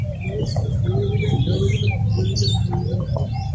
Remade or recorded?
recorded